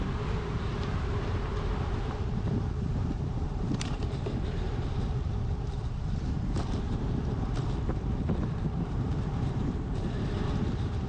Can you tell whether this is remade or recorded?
remade